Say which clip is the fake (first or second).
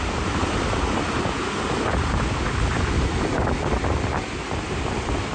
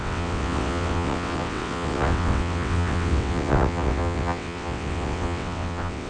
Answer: second